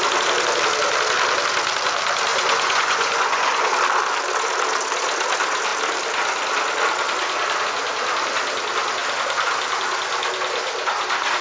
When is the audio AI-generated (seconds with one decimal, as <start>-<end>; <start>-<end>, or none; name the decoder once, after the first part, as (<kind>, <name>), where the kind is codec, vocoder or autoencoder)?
2.3-3.7 (vocoder, Vocos)